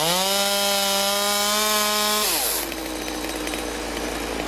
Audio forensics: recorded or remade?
recorded